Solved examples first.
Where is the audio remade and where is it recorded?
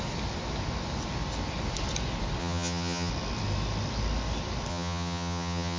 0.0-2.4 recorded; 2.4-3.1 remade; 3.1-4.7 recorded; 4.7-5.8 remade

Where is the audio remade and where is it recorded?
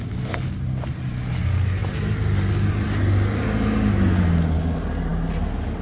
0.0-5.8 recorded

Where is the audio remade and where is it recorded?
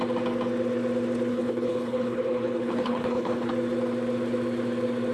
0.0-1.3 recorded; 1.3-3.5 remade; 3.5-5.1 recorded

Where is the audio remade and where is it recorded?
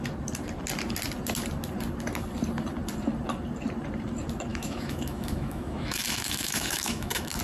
0.0-4.5 recorded; 4.5-7.4 remade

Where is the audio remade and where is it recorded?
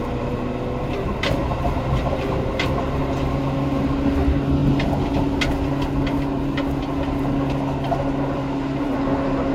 0.0-1.4 recorded; 1.4-3.0 remade; 3.0-9.5 recorded